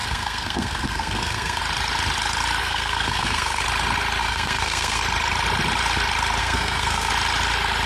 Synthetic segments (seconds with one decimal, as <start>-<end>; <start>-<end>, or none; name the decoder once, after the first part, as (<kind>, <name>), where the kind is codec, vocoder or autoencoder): 0.0-1.6 (codec, SNAC); 2.6-3.6; 4.2-5.0; 6.4-7.1